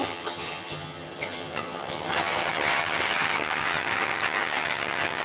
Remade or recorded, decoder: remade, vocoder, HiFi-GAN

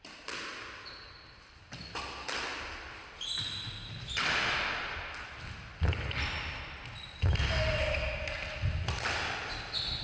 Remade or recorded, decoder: recorded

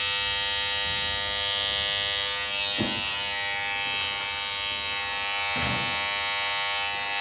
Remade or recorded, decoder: recorded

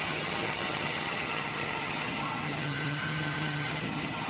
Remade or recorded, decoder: remade, vocoder, HiFi-GAN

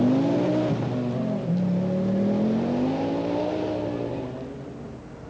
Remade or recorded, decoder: recorded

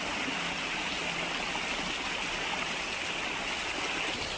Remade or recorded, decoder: recorded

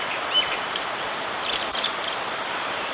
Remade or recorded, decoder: recorded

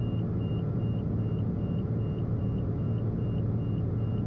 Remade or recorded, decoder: recorded